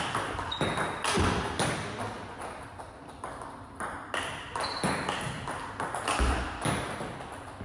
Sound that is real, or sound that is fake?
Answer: real